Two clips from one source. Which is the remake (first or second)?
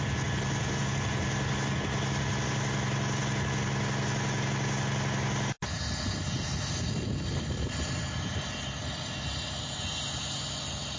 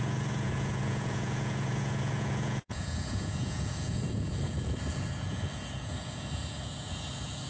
second